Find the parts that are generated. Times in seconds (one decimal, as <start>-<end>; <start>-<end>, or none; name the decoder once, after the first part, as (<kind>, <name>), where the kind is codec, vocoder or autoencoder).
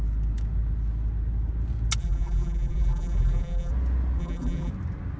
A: 2.0-3.7 (vocoder, BigVGAN v2); 4.2-4.7